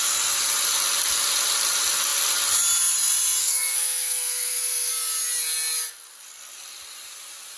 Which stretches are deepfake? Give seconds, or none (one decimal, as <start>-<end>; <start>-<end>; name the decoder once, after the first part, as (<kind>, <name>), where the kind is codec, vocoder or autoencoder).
3.4-4.9 (codec, SNAC)